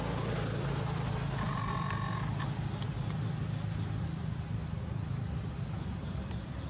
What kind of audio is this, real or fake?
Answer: real